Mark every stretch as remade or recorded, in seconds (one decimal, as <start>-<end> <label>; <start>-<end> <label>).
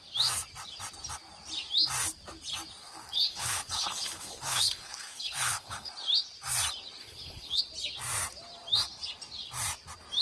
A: 0.0-2.8 recorded; 2.8-5.9 remade; 5.9-7.0 recorded; 7.0-7.6 remade; 7.6-10.2 recorded